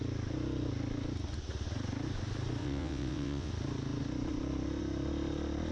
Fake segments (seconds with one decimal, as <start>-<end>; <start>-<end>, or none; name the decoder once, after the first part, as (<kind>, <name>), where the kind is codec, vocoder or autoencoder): 2.6-3.5 (vocoder, WaveNeXt)

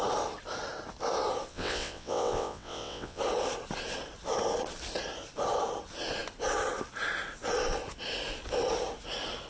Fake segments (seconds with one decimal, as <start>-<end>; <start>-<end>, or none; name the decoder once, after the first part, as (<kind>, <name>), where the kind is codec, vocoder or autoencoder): 1.5-3.2 (vocoder, WaveNeXt)

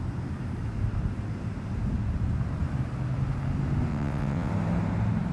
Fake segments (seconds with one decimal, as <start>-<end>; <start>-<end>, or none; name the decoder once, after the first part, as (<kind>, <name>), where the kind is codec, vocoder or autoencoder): 3.9-4.5 (vocoder, WaveNeXt)

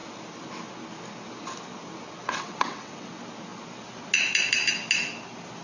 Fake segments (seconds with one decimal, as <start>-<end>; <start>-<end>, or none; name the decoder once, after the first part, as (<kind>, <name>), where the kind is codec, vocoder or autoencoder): 2.2-3.1 (vocoder, WaveNeXt)

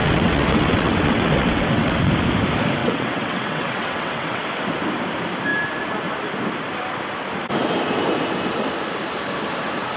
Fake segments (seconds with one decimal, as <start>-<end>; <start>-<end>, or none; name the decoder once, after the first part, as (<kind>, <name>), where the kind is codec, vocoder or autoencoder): 0.0-2.1 (vocoder, WaveNeXt); 2.8-4.4

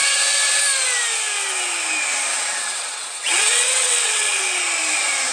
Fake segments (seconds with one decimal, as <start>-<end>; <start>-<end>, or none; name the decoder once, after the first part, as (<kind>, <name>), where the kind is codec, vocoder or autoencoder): 0.0-0.6 (vocoder, WaveNeXt); 2.3-4.4

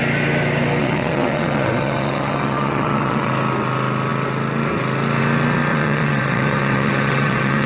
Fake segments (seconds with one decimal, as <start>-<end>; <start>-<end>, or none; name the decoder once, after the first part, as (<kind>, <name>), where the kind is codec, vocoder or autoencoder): 0.8-3.3 (vocoder, WaveNeXt); 5.7-7.7

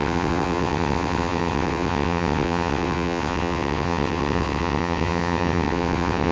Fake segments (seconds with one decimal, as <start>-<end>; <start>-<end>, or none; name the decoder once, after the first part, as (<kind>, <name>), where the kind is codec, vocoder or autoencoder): 0.0-6.3 (vocoder, WaveNeXt)